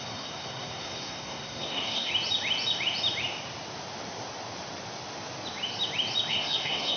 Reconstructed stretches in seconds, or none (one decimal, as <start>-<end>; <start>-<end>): 0.0-2.1; 6.3-7.0